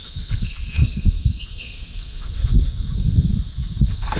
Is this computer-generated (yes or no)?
yes